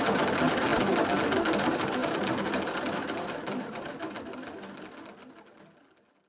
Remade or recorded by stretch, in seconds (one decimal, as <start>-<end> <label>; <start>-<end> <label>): 0.0-2.0 recorded; 2.0-5.8 remade; 5.8-6.3 recorded